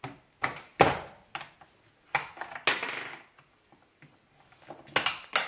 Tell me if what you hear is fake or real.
real